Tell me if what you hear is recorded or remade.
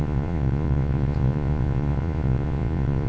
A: remade